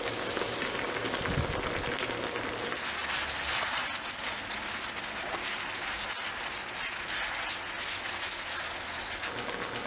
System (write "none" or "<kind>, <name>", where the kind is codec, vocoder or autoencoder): none